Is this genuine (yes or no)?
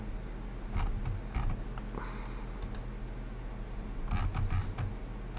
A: yes